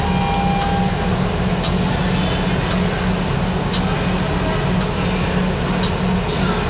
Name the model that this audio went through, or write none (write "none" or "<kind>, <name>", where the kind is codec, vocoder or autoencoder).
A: none